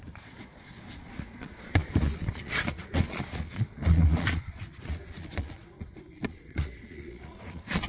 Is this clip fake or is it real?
fake